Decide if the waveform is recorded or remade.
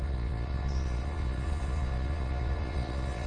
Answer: remade